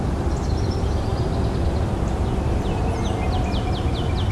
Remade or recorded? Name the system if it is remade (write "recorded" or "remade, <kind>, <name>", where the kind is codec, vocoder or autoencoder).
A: recorded